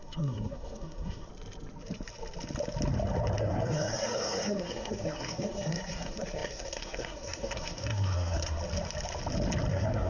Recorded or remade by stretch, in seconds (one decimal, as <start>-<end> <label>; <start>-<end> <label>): 0.0-1.3 remade; 1.3-3.4 recorded; 3.4-8.6 remade; 8.6-9.7 recorded; 9.7-10.1 remade